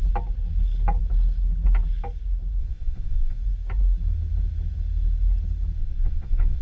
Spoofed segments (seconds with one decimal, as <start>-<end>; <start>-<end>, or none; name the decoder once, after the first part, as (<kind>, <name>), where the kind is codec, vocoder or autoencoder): 2.6-3.4 (vocoder, Vocos); 5.8-6.6